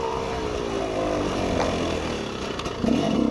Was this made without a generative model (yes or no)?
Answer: yes